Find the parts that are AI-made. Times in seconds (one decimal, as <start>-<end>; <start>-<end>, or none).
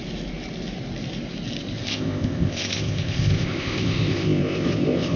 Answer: 1.8-5.2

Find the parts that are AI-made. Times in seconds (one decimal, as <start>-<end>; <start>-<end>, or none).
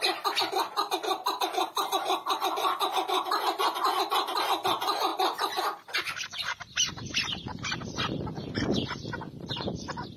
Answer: none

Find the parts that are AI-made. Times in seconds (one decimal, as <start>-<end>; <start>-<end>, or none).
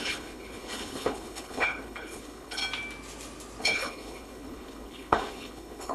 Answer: 0.0-2.6; 3.6-5.9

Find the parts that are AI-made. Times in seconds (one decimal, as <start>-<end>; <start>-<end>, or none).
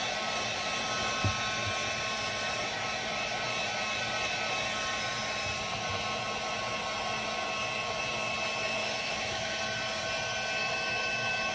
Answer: 8.8-9.6; 10.6-11.5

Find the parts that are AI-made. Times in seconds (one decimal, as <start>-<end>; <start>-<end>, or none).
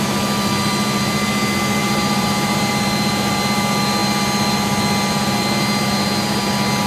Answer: 1.8-2.7